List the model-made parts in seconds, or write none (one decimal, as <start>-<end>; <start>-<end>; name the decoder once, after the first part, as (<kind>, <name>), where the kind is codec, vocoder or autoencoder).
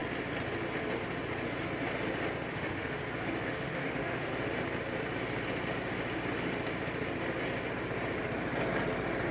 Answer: 2.5-3.0 (autoencoder, DAC-VAE); 3.5-4.3